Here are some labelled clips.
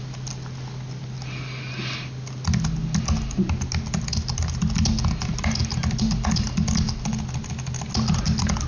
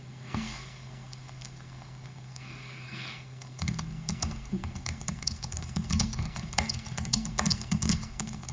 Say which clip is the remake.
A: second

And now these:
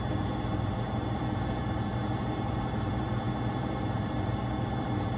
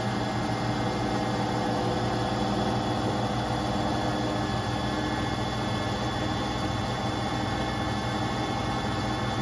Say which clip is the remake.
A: first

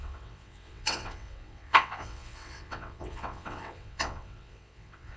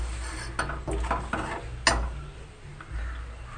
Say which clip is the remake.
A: first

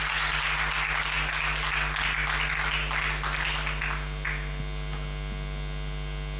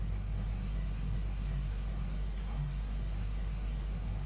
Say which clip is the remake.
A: second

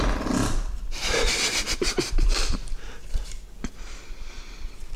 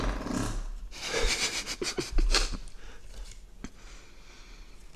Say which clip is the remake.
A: first